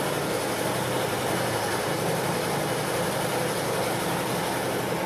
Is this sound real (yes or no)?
yes